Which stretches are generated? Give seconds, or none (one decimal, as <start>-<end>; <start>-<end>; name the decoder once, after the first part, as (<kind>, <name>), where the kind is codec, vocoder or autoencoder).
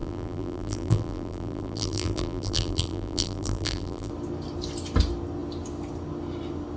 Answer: 0.0-4.1 (vocoder, BigVGAN v2)